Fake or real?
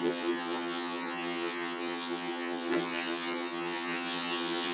fake